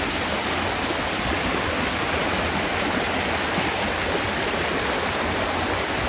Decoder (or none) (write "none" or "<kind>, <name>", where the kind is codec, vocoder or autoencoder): none